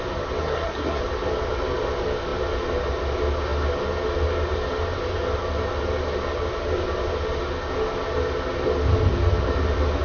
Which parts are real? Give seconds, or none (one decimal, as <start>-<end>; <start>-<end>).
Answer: 0.0-0.4; 1.0-10.0